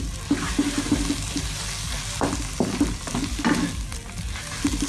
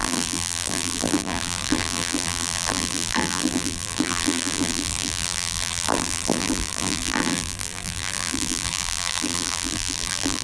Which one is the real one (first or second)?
first